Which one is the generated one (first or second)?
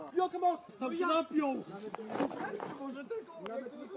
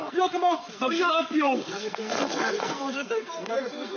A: second